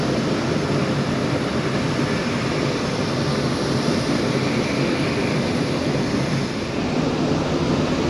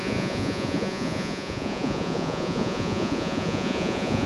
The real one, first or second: first